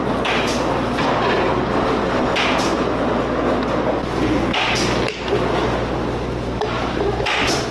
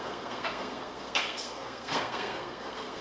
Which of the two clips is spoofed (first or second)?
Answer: second